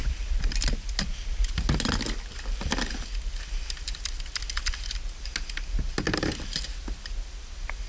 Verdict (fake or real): real